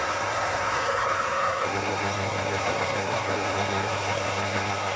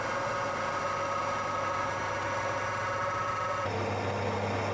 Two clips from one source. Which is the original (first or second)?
second